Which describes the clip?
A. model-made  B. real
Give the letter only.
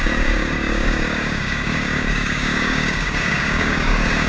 A